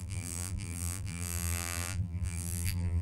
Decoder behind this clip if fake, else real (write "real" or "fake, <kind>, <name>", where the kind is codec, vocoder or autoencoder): fake, vocoder, BigVGAN v2